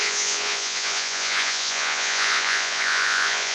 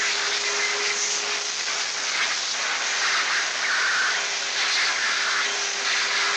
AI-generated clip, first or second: first